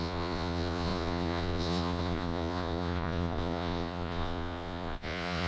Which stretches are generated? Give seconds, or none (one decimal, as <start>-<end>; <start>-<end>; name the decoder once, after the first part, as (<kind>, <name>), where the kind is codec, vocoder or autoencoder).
0.0-5.5 (vocoder, Vocos)